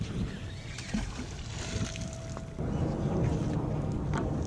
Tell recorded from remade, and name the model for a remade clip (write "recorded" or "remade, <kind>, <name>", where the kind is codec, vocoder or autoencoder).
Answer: recorded